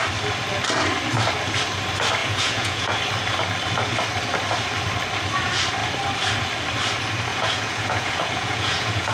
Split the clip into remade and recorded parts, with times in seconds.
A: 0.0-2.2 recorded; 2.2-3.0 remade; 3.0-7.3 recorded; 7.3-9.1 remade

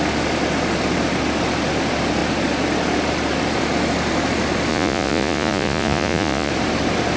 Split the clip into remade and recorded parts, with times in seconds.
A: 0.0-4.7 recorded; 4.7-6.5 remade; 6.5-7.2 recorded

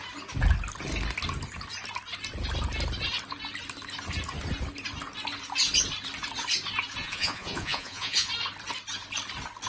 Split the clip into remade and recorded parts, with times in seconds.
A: 0.0-7.0 recorded; 7.0-8.3 remade; 8.3-9.7 recorded